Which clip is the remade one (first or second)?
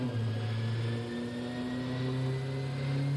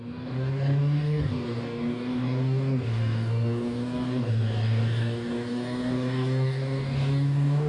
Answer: second